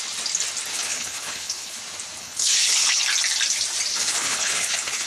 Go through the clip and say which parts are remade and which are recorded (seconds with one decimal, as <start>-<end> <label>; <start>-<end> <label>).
0.0-0.7 recorded; 0.7-1.8 remade; 1.8-2.2 recorded; 2.2-3.0 remade; 3.0-3.9 recorded; 3.9-5.1 remade